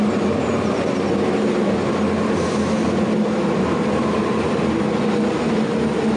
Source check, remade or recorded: recorded